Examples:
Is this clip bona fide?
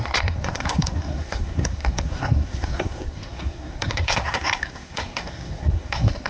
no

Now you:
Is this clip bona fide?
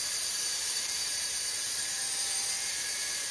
no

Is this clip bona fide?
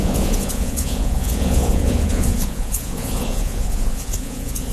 no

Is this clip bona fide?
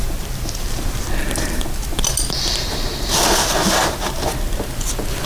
yes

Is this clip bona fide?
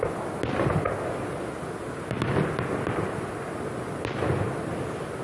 yes